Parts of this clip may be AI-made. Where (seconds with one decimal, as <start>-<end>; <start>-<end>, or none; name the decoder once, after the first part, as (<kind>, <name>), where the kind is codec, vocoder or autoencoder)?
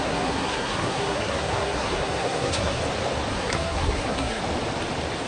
0.0-2.8 (codec, SNAC); 3.3-4.4